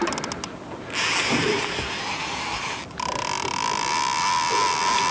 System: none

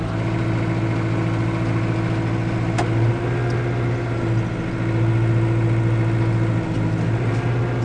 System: none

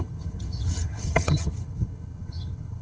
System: vocoder, HiFi-GAN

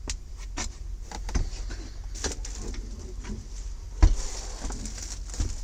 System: none